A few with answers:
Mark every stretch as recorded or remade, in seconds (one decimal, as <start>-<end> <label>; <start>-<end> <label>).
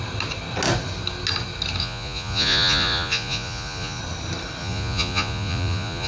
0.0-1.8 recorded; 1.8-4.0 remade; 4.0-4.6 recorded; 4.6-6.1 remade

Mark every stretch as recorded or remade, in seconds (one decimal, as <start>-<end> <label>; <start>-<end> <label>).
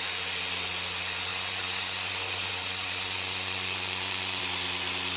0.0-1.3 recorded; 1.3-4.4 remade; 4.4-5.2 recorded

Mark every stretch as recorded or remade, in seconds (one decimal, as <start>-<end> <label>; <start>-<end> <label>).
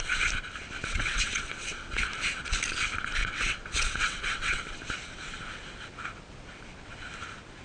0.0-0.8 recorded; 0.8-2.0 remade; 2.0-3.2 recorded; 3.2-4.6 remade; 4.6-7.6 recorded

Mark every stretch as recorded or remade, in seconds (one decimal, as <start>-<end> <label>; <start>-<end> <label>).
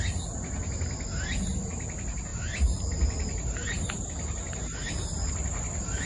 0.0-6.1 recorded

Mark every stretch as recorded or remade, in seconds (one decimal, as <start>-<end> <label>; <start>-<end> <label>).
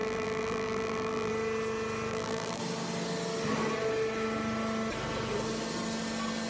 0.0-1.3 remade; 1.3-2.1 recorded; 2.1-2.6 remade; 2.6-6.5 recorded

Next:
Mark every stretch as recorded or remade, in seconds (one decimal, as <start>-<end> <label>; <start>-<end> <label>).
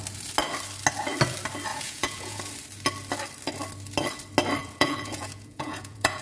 0.0-1.7 recorded; 1.7-2.4 remade; 2.4-4.6 recorded; 4.6-6.2 remade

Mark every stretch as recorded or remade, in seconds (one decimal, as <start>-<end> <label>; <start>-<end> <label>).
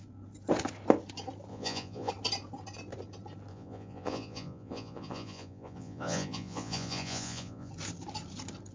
0.0-1.5 recorded; 1.5-2.1 remade; 2.1-3.5 recorded; 3.5-7.7 remade; 7.7-8.7 recorded